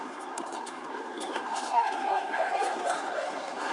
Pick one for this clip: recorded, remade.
remade